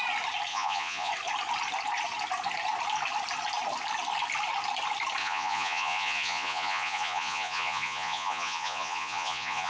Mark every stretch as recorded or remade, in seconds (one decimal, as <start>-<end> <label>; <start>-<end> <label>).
0.0-0.5 recorded; 0.5-1.1 remade; 1.1-5.2 recorded; 5.2-9.7 remade